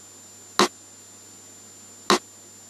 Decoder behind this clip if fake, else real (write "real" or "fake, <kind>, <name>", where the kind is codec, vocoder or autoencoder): real